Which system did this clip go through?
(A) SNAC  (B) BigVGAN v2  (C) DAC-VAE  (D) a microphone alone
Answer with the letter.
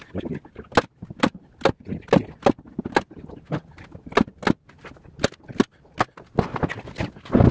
D